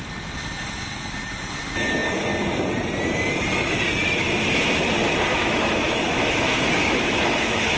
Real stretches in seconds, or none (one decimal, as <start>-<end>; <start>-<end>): 0.0-5.3